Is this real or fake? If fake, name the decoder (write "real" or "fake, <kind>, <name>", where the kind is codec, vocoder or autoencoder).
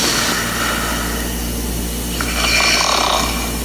real